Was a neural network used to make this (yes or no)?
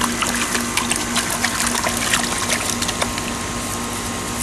no